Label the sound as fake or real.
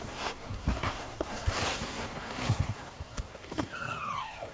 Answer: fake